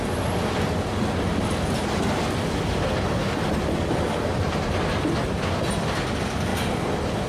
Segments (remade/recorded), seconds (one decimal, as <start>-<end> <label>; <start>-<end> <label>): 0.0-7.3 recorded